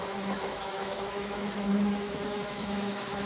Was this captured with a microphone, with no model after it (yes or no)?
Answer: no